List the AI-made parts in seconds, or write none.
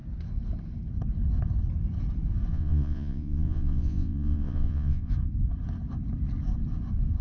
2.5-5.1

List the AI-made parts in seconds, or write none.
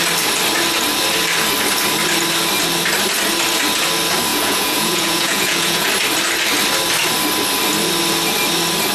4.3-5.9